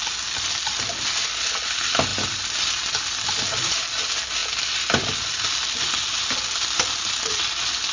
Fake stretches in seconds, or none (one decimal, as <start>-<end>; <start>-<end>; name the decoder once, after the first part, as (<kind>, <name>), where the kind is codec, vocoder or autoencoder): 4.4-7.3 (vocoder, BigVGAN v2)